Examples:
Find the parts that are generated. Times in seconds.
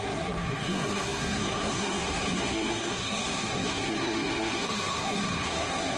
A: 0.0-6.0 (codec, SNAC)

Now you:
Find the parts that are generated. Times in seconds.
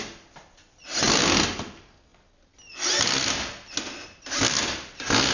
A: none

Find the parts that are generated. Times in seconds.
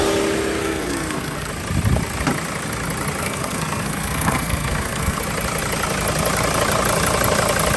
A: 0.6-1.5 (codec, SNAC); 3.2-5.2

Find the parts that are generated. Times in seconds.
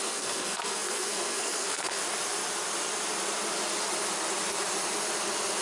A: 0.0-2.0 (codec, SNAC)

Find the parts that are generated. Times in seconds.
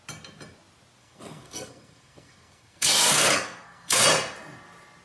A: 1.0-4.0 (codec, SNAC)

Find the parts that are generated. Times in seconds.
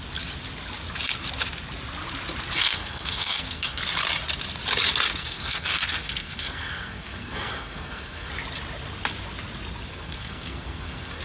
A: 2.6-3.8 (codec, SNAC); 5.1-8.3; 9.9-11.2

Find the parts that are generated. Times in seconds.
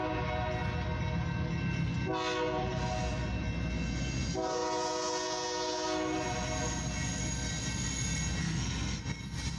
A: 8.4-9.0 (codec, SNAC)